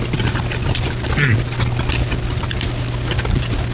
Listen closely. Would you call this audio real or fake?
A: real